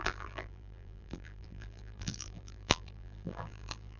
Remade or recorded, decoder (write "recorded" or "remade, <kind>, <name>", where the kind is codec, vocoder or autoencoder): remade, vocoder, BigVGAN v2